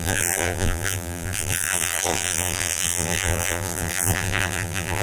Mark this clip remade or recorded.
remade